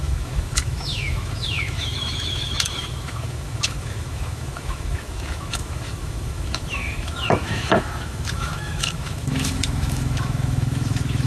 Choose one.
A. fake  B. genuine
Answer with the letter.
A